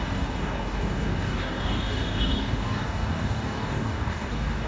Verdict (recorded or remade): remade